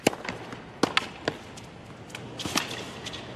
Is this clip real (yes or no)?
yes